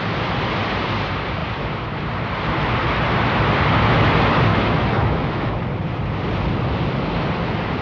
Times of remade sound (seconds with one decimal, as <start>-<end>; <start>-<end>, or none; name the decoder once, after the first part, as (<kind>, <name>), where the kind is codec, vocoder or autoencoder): 4.5-5.5 (autoencoder, DAC-VAE)